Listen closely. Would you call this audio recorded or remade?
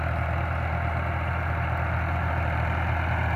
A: recorded